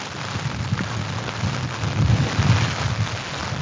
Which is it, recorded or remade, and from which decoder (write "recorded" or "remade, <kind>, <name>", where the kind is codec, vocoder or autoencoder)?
recorded